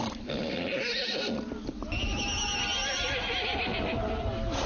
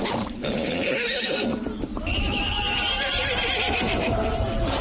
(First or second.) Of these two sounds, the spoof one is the second